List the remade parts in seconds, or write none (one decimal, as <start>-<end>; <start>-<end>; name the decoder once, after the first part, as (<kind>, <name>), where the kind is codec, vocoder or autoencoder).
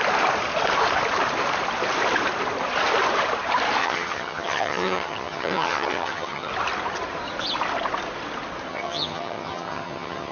3.8-6.5 (vocoder, HiFi-GAN); 8.7-10.3